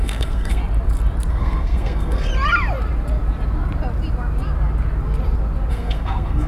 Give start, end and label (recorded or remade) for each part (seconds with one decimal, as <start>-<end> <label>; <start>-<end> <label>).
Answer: 0.0-0.6 remade; 0.6-1.3 recorded; 1.3-2.3 remade; 2.3-5.7 recorded; 5.7-6.5 remade